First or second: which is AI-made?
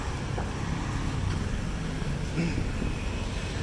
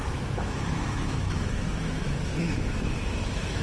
second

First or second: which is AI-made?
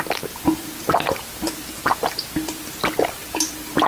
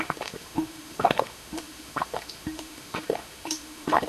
second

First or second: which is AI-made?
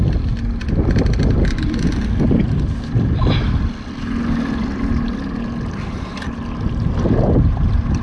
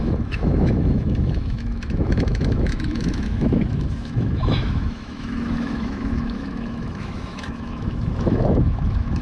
second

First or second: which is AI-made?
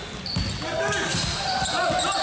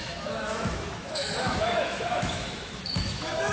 second